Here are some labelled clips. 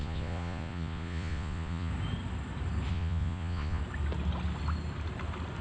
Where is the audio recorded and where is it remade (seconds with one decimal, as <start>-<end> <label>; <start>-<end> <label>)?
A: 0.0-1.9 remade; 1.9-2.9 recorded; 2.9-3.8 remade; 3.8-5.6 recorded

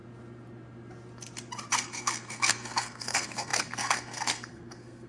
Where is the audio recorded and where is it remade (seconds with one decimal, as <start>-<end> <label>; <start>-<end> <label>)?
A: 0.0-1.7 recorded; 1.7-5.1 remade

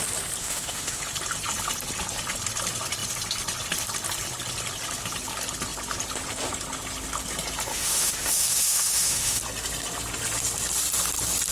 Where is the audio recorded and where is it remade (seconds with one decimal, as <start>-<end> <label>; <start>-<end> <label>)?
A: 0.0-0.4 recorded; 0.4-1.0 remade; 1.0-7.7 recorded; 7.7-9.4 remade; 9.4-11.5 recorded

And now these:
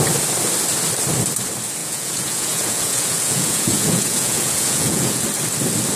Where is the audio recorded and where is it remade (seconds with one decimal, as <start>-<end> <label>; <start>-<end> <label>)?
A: 0.0-1.8 recorded; 1.8-5.2 remade; 5.2-6.0 recorded

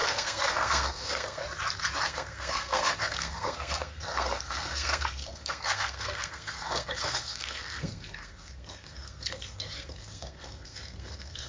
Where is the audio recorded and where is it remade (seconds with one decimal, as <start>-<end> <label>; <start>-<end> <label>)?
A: 0.0-1.4 remade; 1.4-2.0 recorded; 2.0-11.5 remade

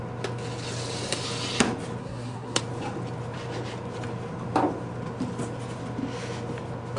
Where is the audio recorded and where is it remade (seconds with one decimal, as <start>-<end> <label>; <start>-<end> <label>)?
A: 0.0-2.0 recorded; 2.0-2.6 remade; 2.6-7.0 recorded